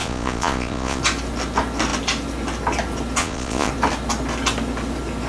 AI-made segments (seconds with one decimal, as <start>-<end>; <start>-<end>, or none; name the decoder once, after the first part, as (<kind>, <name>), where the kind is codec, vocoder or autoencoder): 0.0-1.0 (vocoder, Vocos); 3.2-3.7